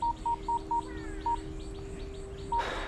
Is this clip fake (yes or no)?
no